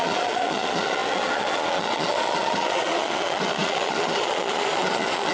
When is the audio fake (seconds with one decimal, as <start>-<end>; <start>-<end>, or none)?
0.0-5.3

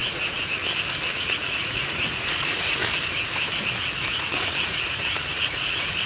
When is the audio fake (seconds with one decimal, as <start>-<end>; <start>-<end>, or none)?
0.0-0.6; 1.1-2.8; 4.1-6.1